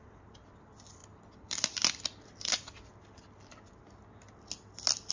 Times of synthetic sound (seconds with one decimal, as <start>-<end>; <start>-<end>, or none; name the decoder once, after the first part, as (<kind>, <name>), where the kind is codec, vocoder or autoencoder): none

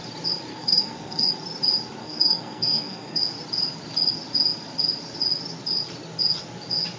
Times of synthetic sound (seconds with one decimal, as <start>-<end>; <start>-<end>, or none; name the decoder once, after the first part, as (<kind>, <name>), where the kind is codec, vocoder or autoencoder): 0.5-1.3 (codec, SNAC); 2.0-3.2

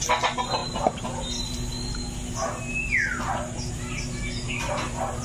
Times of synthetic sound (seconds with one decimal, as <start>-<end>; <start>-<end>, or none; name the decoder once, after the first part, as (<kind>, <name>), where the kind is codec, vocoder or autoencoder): none

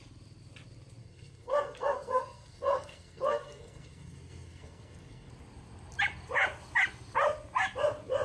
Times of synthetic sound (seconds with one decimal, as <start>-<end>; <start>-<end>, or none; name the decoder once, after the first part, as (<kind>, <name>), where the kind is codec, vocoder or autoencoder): 1.0-5.3 (codec, SNAC)